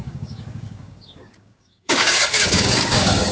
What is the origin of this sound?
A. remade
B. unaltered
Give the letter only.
A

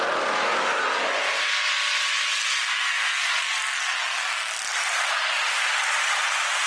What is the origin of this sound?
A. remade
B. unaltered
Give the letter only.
B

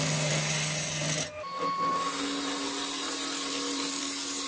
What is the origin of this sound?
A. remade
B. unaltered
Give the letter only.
B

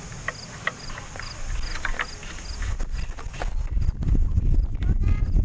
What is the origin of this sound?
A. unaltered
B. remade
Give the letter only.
A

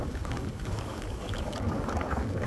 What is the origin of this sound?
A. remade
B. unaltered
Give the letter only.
A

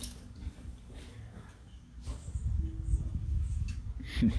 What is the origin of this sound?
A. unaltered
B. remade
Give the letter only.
B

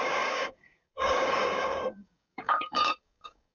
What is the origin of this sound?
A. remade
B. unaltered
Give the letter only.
A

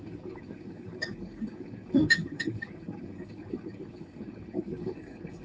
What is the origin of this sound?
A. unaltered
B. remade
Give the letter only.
B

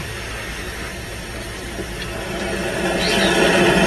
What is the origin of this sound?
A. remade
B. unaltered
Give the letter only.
B